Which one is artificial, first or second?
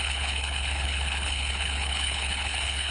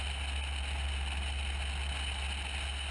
first